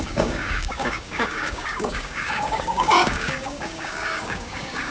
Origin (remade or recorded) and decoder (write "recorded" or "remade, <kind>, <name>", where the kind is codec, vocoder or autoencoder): remade, codec, DAC